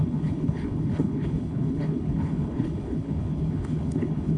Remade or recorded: remade